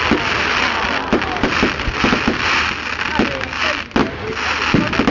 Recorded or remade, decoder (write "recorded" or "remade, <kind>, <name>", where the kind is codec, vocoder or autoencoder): recorded